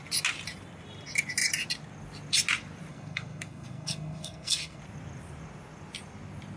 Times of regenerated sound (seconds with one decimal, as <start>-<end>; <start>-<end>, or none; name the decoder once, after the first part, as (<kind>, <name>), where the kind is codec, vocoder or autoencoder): 2.9-4.8 (codec, SNAC)